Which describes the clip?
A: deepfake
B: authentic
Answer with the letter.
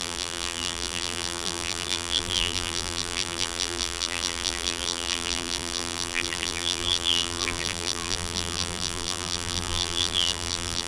A